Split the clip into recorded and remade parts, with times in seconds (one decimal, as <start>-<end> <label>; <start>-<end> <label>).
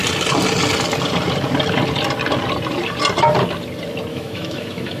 0.0-4.1 recorded; 4.1-5.0 remade